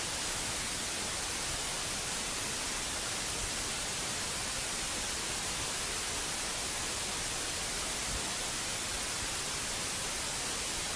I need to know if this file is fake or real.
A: real